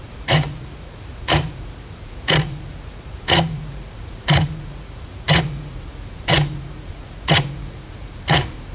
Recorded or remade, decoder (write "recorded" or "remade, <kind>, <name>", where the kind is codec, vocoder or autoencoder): remade, vocoder, Vocos